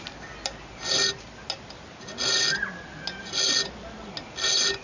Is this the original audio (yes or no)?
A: yes